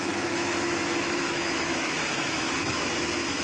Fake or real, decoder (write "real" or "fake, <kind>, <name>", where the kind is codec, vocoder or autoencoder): fake, autoencoder, DAC-VAE